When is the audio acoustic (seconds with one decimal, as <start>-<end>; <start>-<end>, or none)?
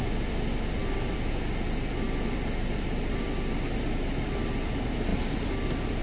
0.0-6.0